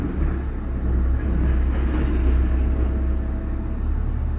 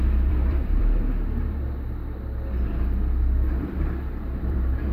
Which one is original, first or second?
first